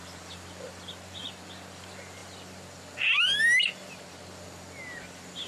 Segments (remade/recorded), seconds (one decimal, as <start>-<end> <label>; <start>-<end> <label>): 0.0-5.5 recorded